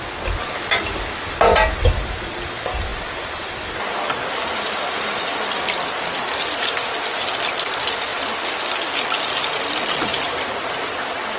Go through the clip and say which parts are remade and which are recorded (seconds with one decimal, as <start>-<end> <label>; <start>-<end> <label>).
0.0-11.4 recorded

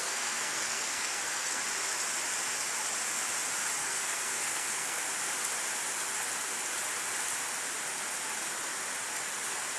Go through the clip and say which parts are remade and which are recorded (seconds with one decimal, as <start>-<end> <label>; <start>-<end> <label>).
0.0-1.6 remade; 1.6-3.8 recorded; 3.8-5.0 remade; 5.0-9.8 recorded

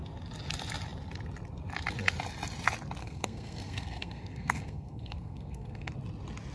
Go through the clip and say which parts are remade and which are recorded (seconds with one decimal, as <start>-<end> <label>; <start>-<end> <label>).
0.0-3.0 recorded; 3.0-5.9 remade; 5.9-6.5 recorded

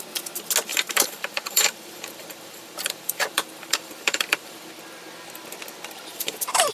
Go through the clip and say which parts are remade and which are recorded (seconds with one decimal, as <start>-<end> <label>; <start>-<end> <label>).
0.0-0.7 recorded; 0.7-4.7 remade; 4.7-6.1 recorded; 6.1-6.7 remade

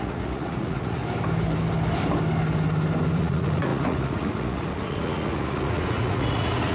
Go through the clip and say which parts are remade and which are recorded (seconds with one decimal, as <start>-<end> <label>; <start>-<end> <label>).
0.0-1.0 remade; 1.0-3.2 recorded; 3.2-6.7 remade

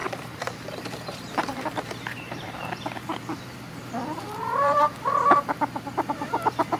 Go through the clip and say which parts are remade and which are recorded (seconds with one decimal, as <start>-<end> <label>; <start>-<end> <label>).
0.0-2.6 remade; 2.6-4.4 recorded; 4.4-5.1 remade; 5.1-6.8 recorded